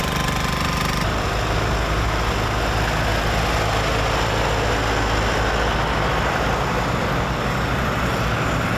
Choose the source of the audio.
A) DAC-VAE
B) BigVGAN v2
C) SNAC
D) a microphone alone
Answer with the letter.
D